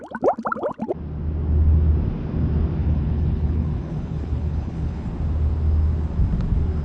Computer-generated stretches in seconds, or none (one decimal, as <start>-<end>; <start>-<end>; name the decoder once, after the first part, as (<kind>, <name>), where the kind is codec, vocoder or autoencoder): 2.8-5.1 (codec, HILCodec)